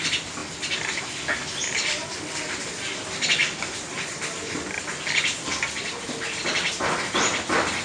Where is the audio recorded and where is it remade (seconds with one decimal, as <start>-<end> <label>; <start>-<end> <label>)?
0.0-7.8 recorded